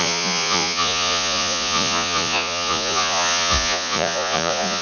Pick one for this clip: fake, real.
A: fake